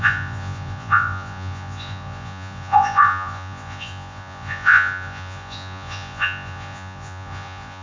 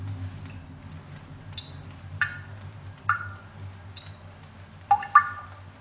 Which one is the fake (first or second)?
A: first